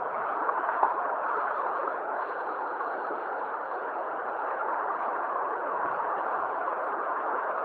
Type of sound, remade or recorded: remade